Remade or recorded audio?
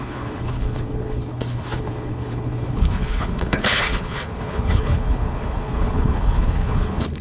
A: remade